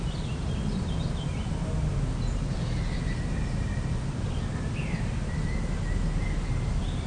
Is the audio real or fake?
real